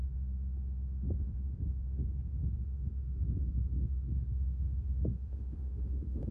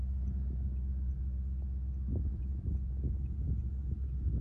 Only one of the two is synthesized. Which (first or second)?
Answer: first